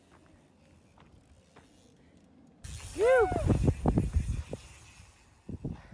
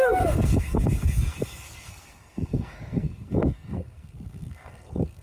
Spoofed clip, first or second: second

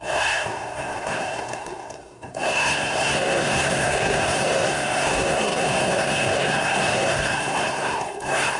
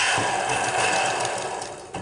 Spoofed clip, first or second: first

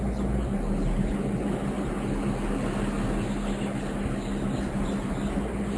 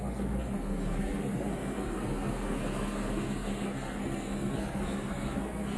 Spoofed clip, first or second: second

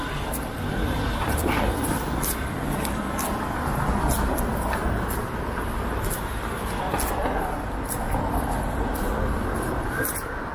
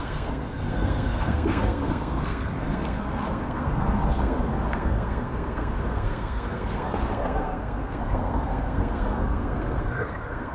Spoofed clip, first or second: second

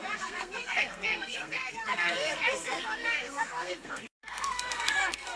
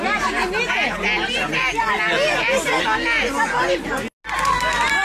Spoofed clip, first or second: first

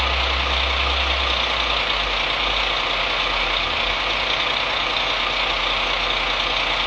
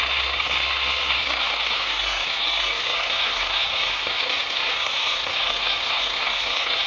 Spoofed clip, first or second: second